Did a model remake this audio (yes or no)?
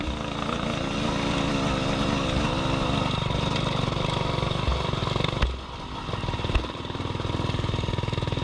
no